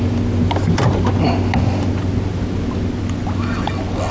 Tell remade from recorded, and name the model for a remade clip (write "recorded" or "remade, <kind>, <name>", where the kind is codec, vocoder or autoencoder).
recorded